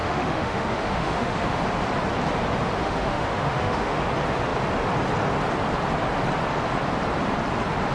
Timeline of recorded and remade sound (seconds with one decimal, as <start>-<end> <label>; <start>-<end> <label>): 0.0-1.6 remade; 1.6-2.8 recorded; 2.8-4.1 remade; 4.1-7.9 recorded